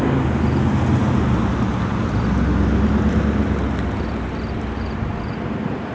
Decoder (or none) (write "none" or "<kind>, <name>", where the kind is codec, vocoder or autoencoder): none